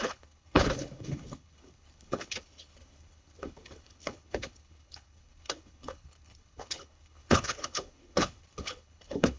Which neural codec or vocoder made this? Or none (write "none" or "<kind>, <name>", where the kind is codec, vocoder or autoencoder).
codec, HILCodec